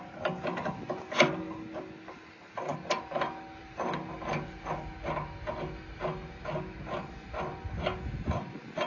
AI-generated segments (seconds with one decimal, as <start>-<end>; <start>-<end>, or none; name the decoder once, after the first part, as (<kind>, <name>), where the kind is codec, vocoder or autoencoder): none